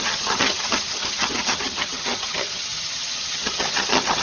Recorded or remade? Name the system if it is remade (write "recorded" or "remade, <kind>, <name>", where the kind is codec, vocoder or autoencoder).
remade, vocoder, HiFi-GAN